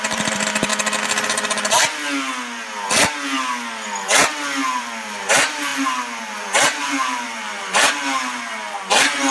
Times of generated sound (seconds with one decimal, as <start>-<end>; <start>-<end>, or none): 0.0-0.7; 4.8-9.3